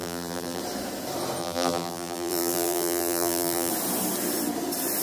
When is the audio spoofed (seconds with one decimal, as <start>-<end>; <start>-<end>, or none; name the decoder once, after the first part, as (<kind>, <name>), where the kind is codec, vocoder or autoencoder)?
0.0-0.6 (vocoder, BigVGAN v2); 1.4-3.7